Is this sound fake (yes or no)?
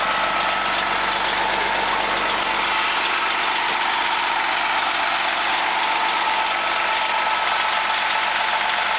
no